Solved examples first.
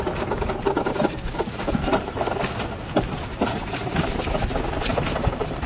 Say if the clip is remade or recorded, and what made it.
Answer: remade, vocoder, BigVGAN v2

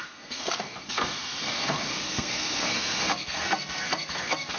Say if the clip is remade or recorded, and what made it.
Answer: remade, codec, SNAC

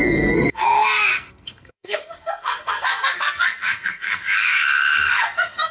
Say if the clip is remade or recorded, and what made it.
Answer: remade, codec, SNAC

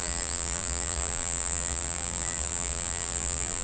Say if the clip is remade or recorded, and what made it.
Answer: remade, vocoder, BigVGAN v2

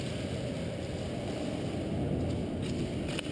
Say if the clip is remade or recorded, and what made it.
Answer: recorded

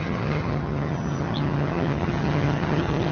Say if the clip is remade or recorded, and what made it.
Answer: remade, vocoder, HiFi-GAN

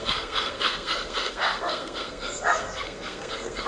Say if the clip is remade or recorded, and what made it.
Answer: remade, codec, SNAC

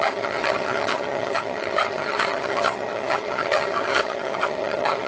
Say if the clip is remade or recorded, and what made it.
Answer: remade, vocoder, HiFi-GAN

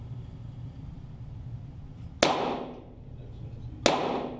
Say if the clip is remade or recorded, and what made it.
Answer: recorded